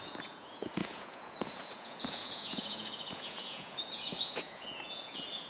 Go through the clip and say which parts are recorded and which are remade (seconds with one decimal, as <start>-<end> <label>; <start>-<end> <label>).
0.0-5.5 remade